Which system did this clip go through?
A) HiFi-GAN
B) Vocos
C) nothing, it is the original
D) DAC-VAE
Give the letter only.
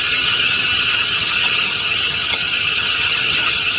A